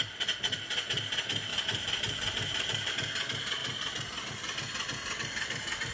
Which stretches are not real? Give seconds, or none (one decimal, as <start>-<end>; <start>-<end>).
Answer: 1.5-2.9